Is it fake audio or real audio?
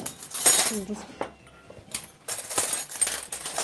real